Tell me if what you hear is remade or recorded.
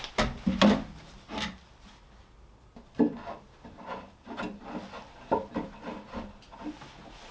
recorded